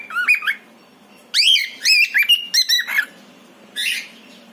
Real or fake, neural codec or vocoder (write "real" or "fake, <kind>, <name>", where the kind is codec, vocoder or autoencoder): real